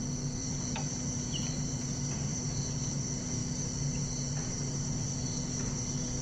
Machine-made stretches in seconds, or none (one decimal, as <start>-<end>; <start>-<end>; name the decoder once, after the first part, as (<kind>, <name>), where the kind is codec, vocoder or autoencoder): 0.4-1.8 (vocoder, BigVGAN v2)